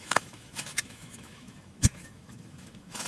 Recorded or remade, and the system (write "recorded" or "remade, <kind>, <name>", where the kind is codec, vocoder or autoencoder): remade, autoencoder, DAC-VAE